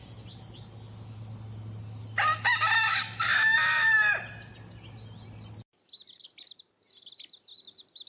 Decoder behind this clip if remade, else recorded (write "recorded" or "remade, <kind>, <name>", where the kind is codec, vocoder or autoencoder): recorded